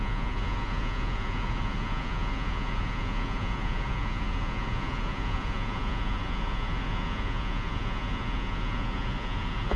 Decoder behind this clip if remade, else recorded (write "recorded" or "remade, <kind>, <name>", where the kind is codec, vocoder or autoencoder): remade, vocoder, Vocos